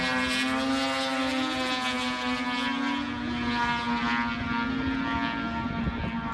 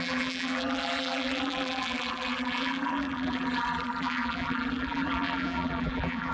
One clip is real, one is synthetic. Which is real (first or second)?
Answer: first